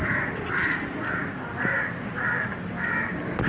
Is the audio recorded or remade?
recorded